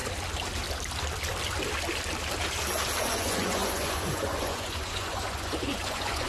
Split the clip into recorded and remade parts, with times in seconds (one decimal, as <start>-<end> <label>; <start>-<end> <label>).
0.0-3.0 recorded; 3.0-6.3 remade